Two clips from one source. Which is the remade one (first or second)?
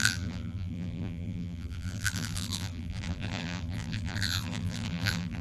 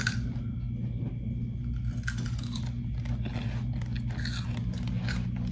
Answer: first